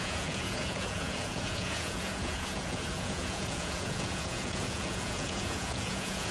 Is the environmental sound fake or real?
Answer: fake